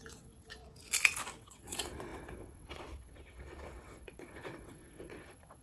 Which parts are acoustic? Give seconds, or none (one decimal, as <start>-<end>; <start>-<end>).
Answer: 0.6-1.4